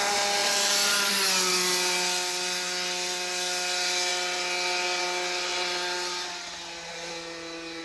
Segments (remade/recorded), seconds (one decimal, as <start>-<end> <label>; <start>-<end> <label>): 0.0-0.4 recorded; 0.4-1.1 remade; 1.1-7.8 recorded

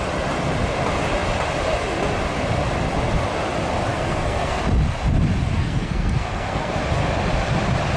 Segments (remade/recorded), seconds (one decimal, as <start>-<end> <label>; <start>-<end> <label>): 0.0-3.9 recorded; 3.9-4.6 remade; 4.6-5.6 recorded; 5.6-6.8 remade; 6.8-8.0 recorded

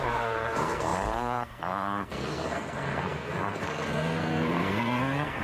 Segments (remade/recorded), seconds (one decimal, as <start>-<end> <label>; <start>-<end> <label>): 0.0-5.4 remade

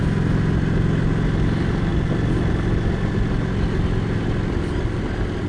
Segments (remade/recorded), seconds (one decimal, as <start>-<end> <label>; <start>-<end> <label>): 0.0-5.5 recorded

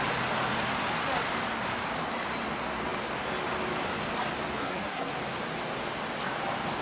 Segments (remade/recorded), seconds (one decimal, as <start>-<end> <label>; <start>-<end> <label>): 0.0-4.6 recorded; 4.6-5.1 remade; 5.1-6.8 recorded